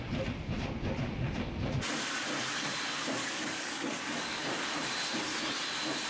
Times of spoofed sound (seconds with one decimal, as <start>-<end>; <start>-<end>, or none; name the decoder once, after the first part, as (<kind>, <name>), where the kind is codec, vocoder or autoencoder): 3.2-4.5 (codec, DAC)